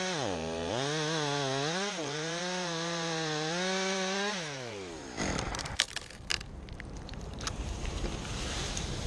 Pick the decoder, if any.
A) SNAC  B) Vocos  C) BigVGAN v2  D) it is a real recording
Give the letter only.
C